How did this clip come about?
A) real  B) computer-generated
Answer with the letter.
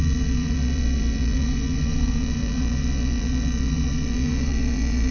B